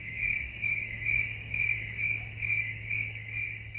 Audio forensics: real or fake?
fake